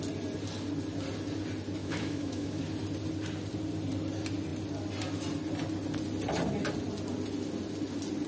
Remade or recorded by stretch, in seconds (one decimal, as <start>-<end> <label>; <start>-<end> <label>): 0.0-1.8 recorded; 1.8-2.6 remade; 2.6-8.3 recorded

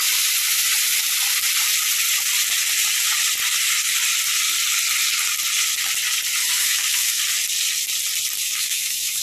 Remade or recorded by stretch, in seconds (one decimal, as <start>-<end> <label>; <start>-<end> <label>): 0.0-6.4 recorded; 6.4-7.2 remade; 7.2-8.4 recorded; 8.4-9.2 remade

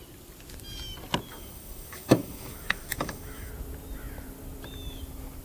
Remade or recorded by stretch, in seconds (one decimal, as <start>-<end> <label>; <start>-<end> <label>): 0.0-1.3 recorded; 1.3-3.5 remade; 3.5-5.4 recorded

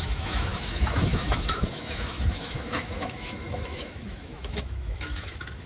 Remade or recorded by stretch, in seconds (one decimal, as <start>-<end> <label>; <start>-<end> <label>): 0.0-5.7 remade

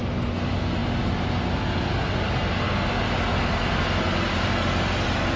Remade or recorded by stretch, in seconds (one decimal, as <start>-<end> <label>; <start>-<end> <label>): 0.0-5.4 recorded

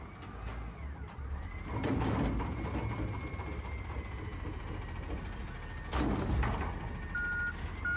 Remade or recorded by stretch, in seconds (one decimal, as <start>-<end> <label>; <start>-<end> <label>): 0.0-8.0 recorded

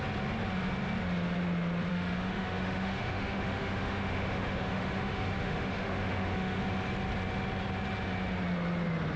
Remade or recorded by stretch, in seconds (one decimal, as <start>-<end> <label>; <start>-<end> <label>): 0.0-1.9 recorded; 1.9-6.6 remade; 6.6-9.2 recorded